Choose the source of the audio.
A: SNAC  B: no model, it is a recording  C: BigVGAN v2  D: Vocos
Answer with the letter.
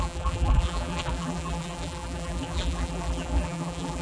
C